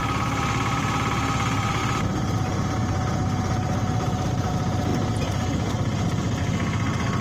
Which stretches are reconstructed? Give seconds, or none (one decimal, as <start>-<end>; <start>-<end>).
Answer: 1.8-4.5

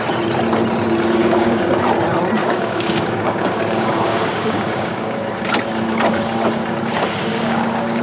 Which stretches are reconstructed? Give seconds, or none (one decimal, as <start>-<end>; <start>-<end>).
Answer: 1.2-1.8; 2.4-5.4; 7.3-8.0

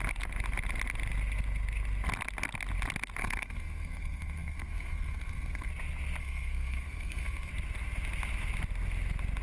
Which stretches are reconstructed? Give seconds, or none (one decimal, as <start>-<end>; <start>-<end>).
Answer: 3.2-5.7; 6.2-7.5